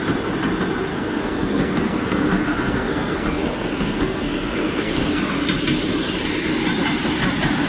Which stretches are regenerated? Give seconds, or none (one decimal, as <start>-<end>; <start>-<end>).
0.9-5.2